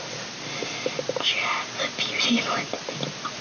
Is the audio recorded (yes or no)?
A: yes